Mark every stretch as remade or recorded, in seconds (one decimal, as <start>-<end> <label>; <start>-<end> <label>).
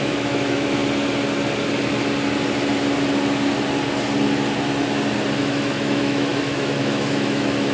0.0-0.8 remade; 0.8-5.4 recorded; 5.4-7.7 remade